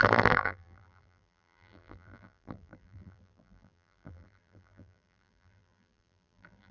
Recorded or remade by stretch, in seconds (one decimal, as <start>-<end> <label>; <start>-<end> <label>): 0.0-6.7 remade